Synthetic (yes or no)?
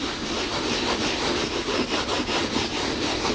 no